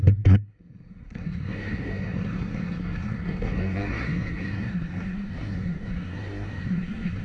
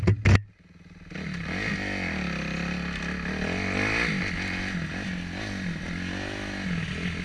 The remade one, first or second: first